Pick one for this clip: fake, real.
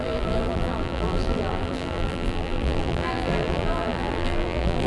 fake